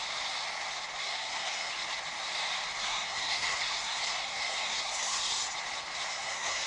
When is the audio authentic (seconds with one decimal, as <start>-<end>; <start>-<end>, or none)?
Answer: 0.0-1.0; 1.7-2.8; 5.3-6.1